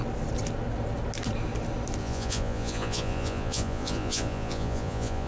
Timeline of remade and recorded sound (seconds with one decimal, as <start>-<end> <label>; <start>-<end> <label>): 0.0-2.0 recorded; 2.0-5.3 remade